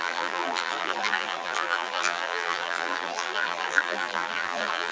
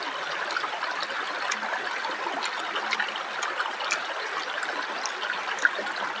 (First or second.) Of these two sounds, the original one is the second